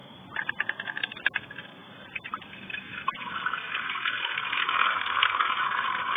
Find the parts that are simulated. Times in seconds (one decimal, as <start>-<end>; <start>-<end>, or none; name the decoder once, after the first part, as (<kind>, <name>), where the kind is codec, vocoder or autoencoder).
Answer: 0.0-0.5 (vocoder, BigVGAN v2); 1.8-3.0